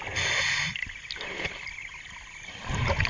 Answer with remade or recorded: recorded